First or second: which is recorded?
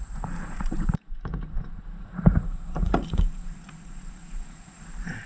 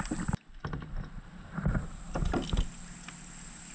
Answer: second